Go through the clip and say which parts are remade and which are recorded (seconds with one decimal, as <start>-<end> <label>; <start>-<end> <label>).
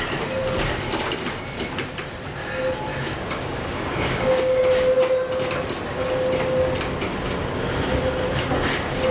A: 0.0-2.9 recorded; 2.9-4.6 remade; 4.6-9.1 recorded